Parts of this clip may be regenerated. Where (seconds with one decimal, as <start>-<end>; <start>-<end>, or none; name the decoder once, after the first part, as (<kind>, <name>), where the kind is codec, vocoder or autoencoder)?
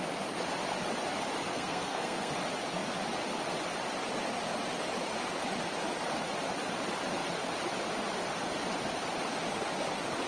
1.5-2.3 (codec, SNAC)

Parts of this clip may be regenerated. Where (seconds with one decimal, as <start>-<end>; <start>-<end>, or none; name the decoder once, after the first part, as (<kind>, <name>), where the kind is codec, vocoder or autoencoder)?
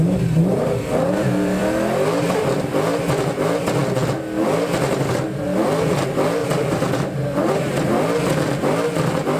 0.4-1.6 (vocoder, BigVGAN v2); 6.4-7.5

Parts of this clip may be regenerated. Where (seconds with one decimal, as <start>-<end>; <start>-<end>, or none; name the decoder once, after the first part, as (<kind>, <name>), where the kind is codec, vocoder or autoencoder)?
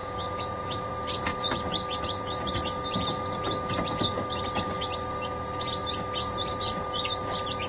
0.0-0.9 (vocoder, Vocos)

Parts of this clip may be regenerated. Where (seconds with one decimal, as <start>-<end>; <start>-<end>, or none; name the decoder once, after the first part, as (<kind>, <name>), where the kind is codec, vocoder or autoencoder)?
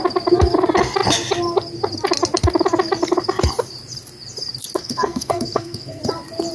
4.8-6.0 (codec, SNAC)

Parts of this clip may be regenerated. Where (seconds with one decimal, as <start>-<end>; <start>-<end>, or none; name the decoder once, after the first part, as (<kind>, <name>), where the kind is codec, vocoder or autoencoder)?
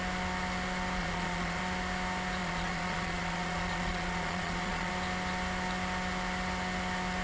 1.0-1.6 (vocoder, Vocos); 2.4-4.9